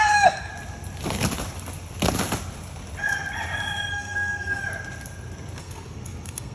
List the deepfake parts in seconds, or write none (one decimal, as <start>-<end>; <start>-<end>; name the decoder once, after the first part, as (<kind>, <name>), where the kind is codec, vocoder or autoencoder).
0.0-0.5 (codec, SNAC); 3.9-4.6; 5.6-6.5